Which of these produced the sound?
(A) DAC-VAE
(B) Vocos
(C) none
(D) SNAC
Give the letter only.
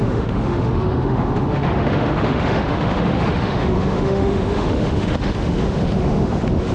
A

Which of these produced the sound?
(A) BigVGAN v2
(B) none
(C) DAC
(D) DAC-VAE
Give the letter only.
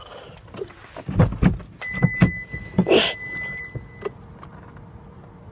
B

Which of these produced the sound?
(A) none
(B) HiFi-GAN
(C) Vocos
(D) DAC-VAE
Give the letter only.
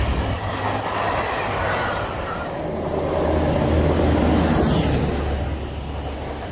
A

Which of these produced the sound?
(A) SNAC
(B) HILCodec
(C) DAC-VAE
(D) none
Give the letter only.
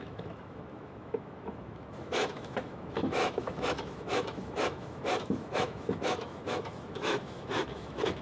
C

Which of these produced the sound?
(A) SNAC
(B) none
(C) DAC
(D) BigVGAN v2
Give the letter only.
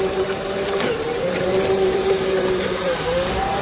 D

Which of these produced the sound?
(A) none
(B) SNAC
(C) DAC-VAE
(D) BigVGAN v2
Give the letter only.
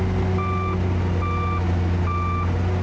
A